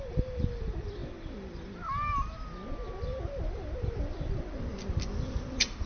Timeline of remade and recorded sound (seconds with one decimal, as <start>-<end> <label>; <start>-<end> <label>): 0.0-5.9 recorded